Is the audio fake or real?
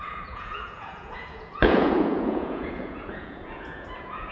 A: fake